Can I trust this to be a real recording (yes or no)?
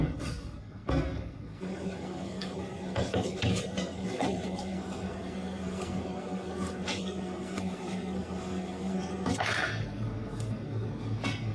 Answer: no